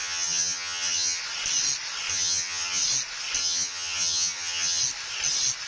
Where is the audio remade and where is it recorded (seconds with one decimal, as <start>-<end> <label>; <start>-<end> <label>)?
0.0-1.2 remade; 1.2-2.1 recorded; 2.1-2.8 remade; 2.8-3.4 recorded; 3.4-4.8 remade; 4.8-5.7 recorded